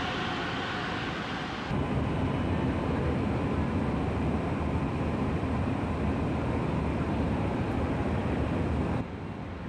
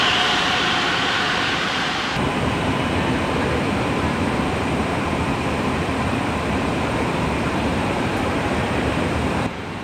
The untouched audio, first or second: first